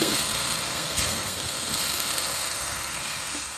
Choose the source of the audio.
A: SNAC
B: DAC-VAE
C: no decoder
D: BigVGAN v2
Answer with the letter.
A